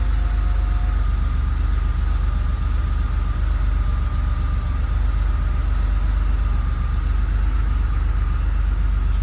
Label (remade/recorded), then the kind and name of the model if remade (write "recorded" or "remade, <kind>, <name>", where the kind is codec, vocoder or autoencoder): recorded